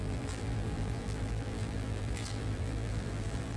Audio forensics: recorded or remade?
remade